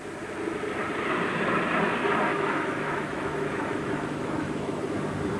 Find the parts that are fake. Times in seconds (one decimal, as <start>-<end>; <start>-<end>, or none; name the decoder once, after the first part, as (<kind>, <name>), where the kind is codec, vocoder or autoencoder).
2.3-4.8 (autoencoder, DAC-VAE)